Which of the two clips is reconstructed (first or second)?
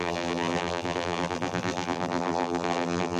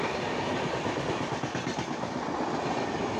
first